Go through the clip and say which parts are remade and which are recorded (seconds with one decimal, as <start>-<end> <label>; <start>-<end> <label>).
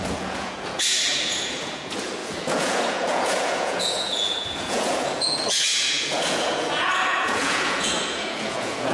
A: 0.0-8.9 remade